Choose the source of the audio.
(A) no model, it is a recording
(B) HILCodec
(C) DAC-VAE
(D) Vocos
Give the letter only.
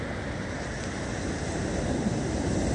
A